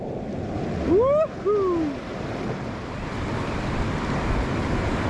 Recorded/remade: recorded